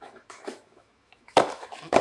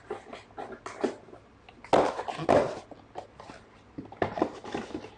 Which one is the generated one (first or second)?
first